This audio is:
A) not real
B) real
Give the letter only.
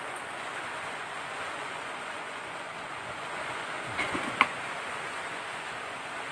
A